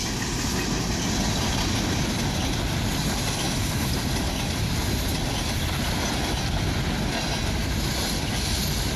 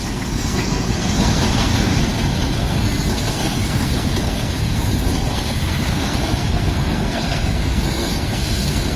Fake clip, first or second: second